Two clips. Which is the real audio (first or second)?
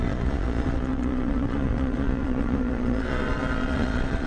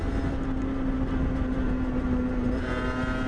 second